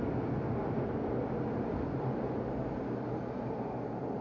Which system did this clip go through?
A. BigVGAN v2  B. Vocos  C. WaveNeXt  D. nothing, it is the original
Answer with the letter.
D